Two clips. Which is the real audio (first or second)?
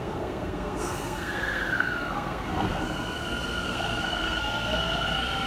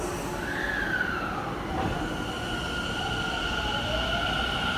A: second